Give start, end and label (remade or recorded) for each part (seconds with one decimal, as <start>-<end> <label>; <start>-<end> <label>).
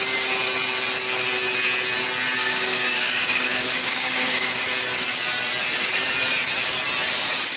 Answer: 0.0-2.4 recorded; 2.4-4.5 remade; 4.5-7.6 recorded